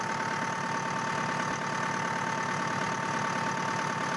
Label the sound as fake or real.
real